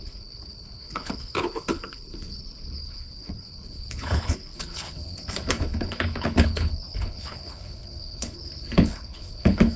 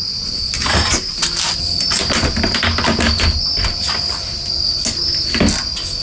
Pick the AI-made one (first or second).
first